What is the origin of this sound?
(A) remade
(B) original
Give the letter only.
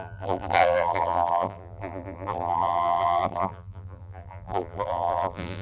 A